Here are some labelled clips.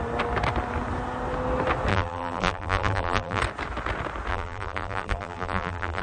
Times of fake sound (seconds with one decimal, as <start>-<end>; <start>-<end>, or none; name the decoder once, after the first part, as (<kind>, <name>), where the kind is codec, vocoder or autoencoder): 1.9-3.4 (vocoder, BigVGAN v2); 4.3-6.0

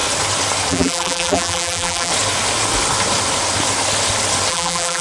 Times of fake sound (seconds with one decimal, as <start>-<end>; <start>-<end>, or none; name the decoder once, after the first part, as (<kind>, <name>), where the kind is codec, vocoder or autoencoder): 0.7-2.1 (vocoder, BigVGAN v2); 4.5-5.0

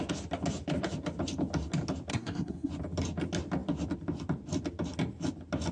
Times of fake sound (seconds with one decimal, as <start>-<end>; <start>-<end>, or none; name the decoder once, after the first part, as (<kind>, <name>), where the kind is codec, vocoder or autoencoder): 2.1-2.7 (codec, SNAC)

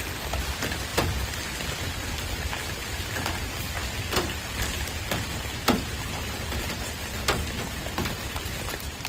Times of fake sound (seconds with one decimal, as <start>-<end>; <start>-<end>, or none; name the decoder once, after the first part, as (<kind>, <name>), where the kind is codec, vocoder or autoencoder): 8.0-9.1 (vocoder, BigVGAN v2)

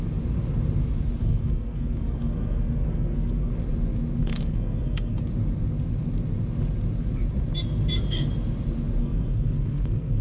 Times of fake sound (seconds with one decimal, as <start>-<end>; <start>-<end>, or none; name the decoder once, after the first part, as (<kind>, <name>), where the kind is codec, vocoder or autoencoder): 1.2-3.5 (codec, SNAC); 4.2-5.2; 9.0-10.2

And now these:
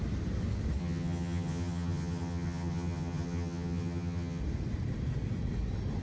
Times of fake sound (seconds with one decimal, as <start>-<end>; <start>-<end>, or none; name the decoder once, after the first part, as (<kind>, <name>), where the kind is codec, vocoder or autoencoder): 0.8-4.4 (vocoder, HiFi-GAN)

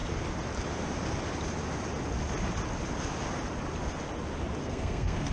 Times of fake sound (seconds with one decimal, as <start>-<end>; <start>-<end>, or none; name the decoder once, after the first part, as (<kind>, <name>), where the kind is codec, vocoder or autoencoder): 4.6-5.3 (codec, SNAC)